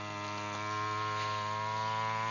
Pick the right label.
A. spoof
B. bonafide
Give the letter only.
B